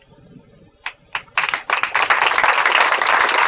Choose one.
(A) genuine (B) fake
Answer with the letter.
A